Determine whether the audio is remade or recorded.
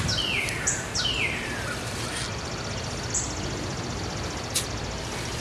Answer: recorded